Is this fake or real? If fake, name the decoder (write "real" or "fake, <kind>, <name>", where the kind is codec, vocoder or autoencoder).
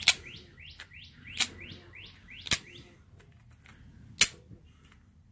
real